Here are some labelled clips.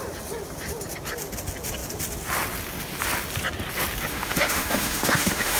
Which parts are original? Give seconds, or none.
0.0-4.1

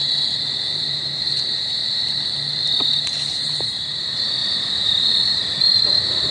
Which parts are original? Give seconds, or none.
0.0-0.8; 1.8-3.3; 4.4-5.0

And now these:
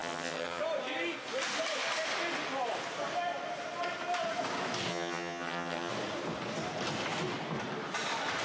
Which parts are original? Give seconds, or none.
0.6-4.9; 5.9-8.4

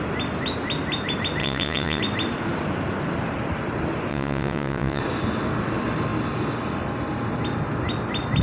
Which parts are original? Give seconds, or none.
0.0-1.4; 2.0-4.1; 5.0-8.4

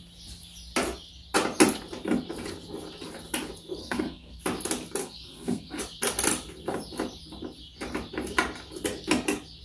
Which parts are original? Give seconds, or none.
0.0-3.8; 4.4-5.0; 5.8-9.6